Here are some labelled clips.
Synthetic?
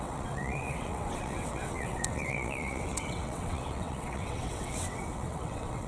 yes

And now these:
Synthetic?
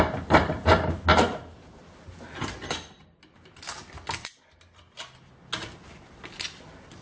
no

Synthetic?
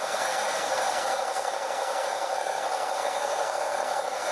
yes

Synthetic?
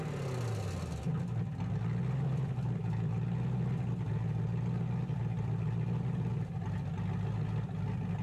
no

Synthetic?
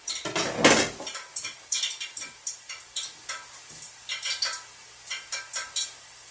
no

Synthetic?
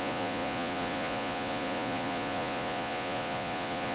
yes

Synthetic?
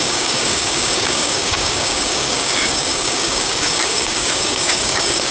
yes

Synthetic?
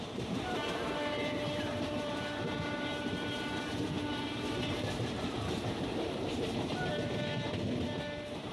yes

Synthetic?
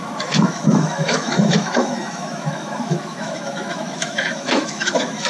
yes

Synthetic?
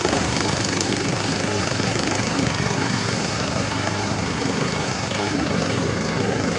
yes